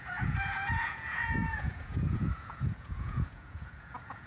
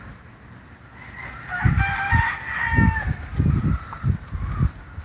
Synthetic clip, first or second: first